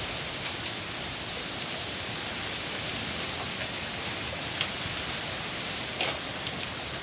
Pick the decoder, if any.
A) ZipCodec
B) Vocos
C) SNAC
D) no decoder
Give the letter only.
D